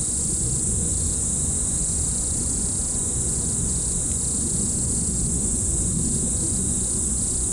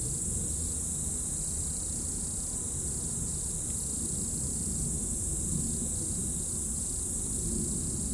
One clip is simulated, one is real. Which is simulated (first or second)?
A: first